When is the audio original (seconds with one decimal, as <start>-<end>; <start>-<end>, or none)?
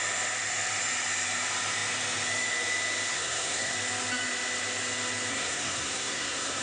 0.0-3.1; 3.7-5.3